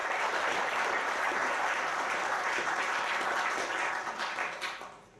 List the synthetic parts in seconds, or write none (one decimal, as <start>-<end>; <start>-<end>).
0.0-2.8